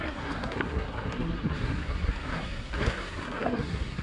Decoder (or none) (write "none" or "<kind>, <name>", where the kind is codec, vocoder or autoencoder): codec, SNAC